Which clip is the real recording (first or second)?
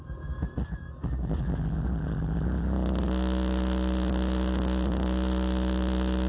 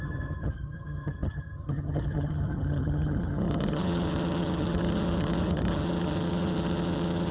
first